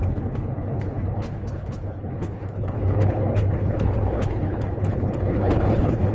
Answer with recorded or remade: remade